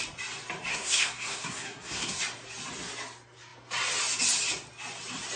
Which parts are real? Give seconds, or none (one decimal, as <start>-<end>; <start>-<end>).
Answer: 0.0-0.7; 2.2-5.4